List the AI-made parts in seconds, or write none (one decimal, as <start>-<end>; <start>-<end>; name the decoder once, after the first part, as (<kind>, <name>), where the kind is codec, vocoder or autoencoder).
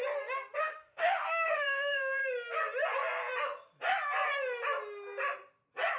0.6-2.2 (autoencoder, DAC-VAE)